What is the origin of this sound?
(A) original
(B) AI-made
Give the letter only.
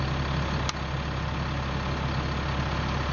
A